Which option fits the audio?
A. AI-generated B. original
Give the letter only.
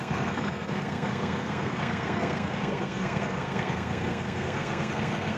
A